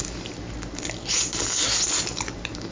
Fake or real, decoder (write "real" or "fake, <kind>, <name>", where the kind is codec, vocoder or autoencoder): real